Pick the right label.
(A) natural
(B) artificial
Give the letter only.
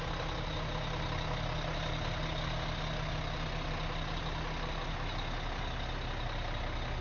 A